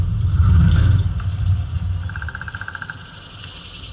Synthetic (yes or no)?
no